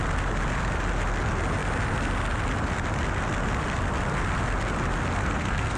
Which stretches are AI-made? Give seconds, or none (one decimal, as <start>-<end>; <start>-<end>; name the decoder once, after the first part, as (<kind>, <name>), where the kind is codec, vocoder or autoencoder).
5.2-5.8 (codec, SNAC)